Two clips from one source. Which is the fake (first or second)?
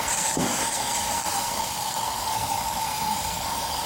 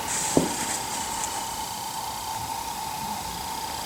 first